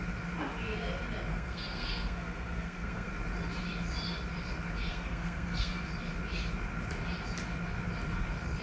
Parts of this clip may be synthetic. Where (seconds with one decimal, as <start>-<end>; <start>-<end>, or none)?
1.3-3.1; 4.9-5.8

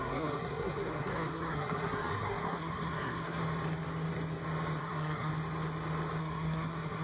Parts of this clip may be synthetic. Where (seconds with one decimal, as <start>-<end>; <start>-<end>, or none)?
0.0-3.4; 4.8-5.3; 6.2-7.0

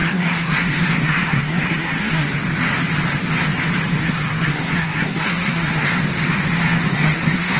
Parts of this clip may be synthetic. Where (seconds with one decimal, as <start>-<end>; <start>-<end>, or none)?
0.0-2.3; 4.0-5.9; 6.9-7.6

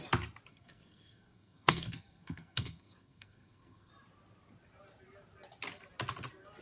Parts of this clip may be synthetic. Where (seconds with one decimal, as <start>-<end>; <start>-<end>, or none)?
0.5-3.9

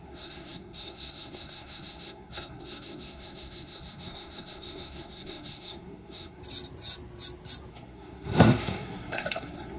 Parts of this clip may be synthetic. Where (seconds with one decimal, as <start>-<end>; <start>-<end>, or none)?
0.0-6.4; 7.7-9.8

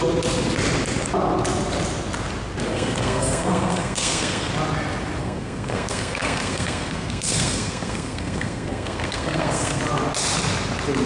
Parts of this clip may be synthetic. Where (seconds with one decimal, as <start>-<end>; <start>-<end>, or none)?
2.7-4.5; 5.2-9.8